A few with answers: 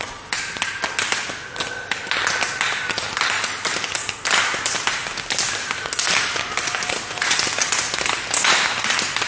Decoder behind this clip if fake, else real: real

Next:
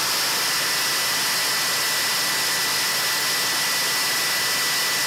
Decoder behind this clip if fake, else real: real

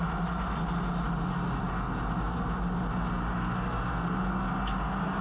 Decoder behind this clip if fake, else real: real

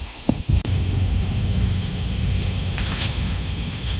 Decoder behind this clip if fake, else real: fake, autoencoder, DAC-VAE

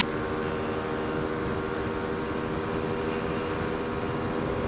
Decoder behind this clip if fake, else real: real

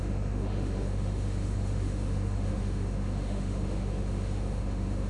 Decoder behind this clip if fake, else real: fake, autoencoder, DAC-VAE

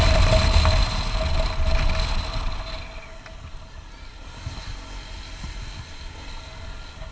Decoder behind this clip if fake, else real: real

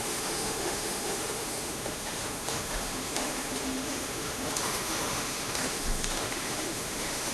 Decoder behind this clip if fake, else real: fake, autoencoder, DAC-VAE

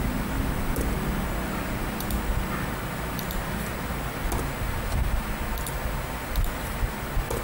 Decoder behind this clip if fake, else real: real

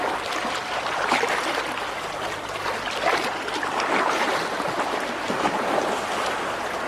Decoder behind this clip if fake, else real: real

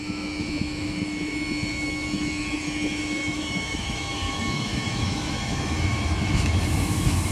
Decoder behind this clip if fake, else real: fake, autoencoder, DAC-VAE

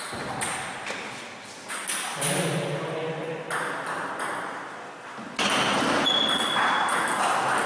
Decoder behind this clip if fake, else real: real